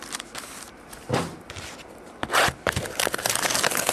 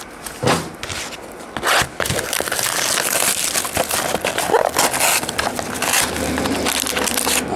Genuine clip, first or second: second